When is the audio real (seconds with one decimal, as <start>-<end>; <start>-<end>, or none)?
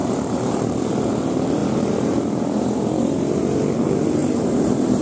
0.8-1.6; 3.4-4.2